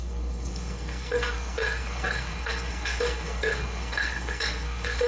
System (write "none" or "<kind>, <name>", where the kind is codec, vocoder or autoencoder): codec, SNAC